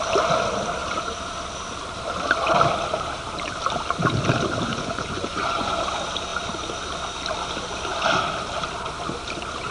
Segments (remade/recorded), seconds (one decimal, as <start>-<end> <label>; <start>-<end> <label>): 0.0-4.7 recorded; 4.7-5.8 remade; 5.8-9.7 recorded